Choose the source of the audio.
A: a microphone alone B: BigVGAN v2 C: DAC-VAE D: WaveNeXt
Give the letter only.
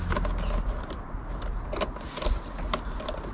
A